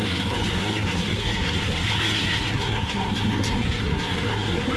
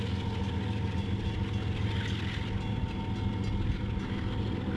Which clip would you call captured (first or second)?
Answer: second